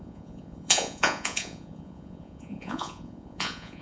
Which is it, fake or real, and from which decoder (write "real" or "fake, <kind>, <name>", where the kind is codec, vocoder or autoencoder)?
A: fake, vocoder, Vocos